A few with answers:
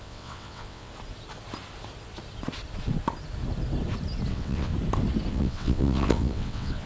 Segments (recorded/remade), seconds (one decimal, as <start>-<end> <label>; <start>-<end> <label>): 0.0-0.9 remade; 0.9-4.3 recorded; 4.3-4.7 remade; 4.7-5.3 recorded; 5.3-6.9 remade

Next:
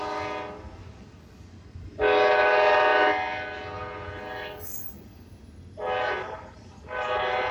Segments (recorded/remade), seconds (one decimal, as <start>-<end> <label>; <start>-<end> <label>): 0.0-7.5 recorded

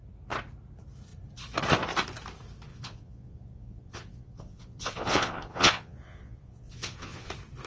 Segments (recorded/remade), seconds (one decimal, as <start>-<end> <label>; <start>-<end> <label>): 0.0-2.7 recorded; 2.7-7.3 remade; 7.3-7.7 recorded

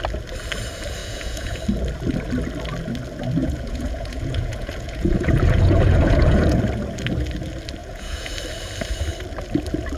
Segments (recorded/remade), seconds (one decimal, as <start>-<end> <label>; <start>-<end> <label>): 0.0-1.0 recorded; 1.0-1.6 remade; 1.6-3.4 recorded; 3.4-6.6 remade; 6.6-7.8 recorded; 7.8-8.3 remade; 8.3-10.0 recorded